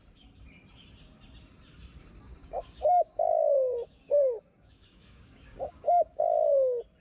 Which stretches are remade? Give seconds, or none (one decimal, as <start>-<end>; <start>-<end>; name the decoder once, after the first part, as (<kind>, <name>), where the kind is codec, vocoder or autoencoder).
2.3-6.5 (codec, DAC)